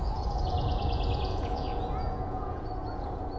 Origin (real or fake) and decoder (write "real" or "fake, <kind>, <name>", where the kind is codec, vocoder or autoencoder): fake, vocoder, Vocos